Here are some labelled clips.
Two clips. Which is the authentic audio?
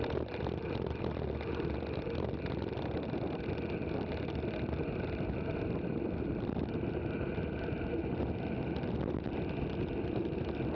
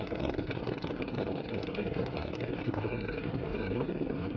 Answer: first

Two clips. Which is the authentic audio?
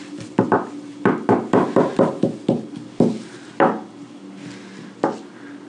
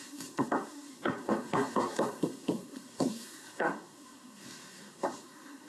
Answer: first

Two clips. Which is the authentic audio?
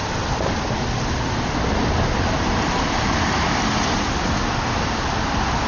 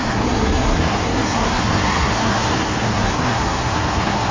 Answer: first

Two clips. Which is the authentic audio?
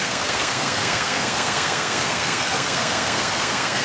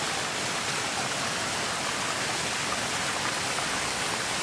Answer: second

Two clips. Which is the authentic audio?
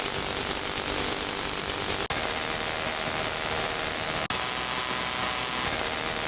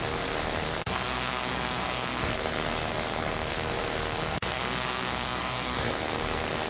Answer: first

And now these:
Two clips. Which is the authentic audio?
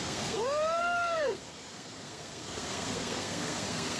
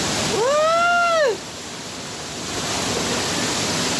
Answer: second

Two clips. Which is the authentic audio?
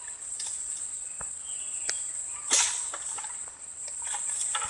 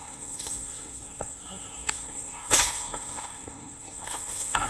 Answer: first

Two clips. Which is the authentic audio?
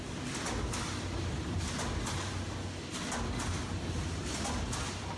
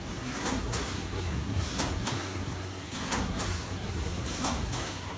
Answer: first